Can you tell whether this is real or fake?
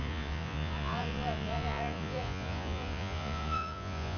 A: fake